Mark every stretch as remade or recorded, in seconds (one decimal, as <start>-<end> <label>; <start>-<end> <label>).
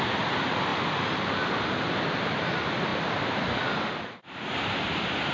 0.0-5.3 recorded